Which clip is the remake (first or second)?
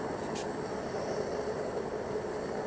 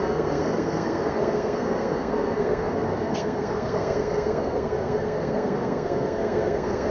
second